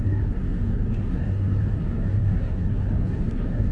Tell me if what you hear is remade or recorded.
remade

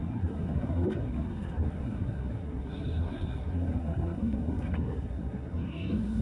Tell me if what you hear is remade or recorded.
remade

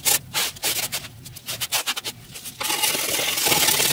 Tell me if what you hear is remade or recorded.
recorded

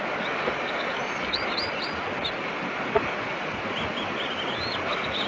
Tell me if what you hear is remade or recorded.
recorded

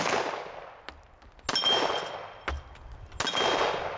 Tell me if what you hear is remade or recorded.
recorded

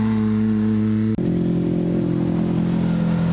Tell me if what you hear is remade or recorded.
recorded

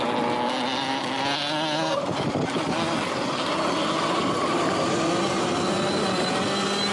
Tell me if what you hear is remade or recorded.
recorded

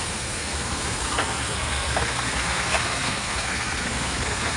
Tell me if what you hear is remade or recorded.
remade